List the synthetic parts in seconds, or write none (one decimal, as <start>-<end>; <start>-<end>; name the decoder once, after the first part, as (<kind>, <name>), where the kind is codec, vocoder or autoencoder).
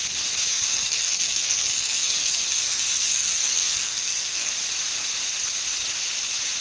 0.5-4.5 (codec, SNAC)